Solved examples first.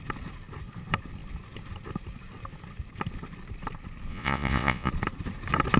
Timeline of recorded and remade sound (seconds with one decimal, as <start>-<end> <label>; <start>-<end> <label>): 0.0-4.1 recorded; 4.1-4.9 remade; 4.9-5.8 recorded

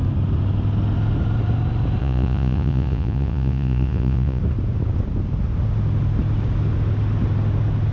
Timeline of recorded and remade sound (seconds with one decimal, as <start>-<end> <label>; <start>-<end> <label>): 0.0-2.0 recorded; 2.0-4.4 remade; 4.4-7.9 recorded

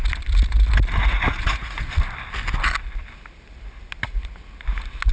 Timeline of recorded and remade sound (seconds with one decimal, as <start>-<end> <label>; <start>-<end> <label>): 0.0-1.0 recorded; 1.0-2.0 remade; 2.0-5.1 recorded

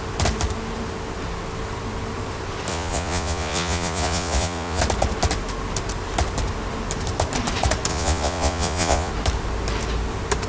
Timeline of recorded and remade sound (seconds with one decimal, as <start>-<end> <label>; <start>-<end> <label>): 0.0-2.7 recorded; 2.7-4.8 remade; 4.8-7.9 recorded; 7.9-9.1 remade; 9.1-10.5 recorded

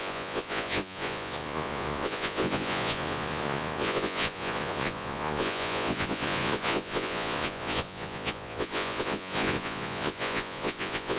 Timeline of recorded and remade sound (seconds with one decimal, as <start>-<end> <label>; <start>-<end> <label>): 0.0-11.2 remade

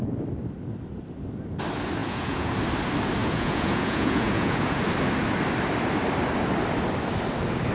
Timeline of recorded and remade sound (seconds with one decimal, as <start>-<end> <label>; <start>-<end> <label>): 0.0-2.0 recorded; 2.0-2.5 remade; 2.5-3.2 recorded; 3.2-4.8 remade; 4.8-7.7 recorded

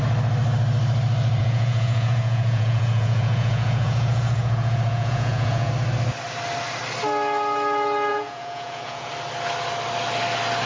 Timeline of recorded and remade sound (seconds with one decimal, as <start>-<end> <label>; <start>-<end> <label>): 0.0-1.4 recorded; 1.4-5.7 remade; 5.7-8.1 recorded; 8.1-9.1 remade; 9.1-10.7 recorded

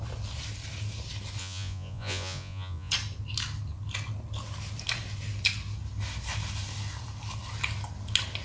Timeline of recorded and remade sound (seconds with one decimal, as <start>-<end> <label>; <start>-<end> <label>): 0.0-1.4 recorded; 1.4-2.9 remade; 2.9-8.4 recorded